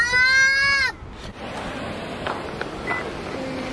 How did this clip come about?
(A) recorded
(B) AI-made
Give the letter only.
A